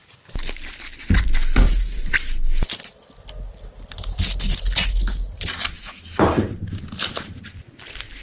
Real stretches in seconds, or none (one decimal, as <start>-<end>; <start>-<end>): 0.0-8.2